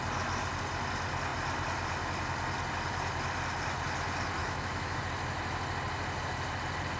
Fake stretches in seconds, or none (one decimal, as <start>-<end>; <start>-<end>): 4.4-5.0